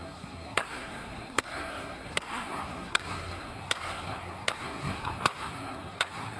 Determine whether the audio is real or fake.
fake